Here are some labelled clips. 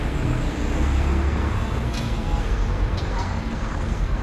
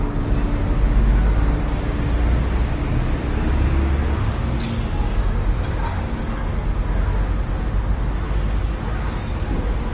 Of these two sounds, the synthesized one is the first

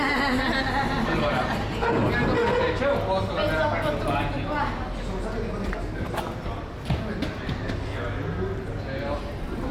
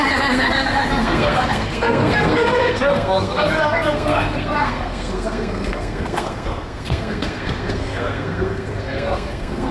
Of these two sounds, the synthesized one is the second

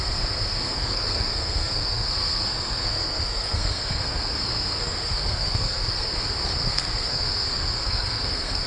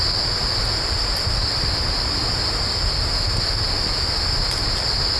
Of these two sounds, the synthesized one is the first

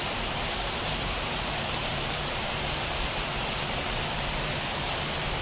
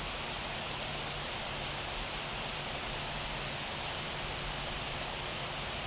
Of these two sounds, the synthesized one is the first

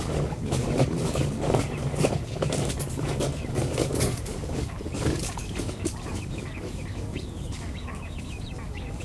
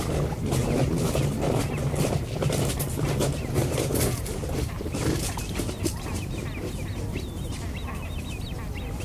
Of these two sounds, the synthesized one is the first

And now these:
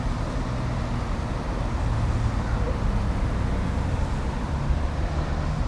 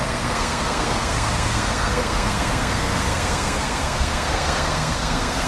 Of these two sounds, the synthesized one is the second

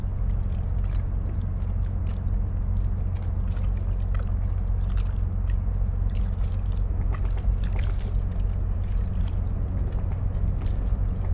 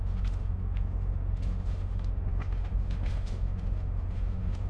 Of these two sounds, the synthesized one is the second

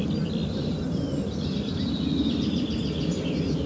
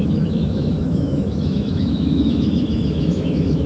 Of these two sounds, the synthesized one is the second